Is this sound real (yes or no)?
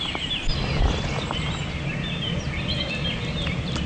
yes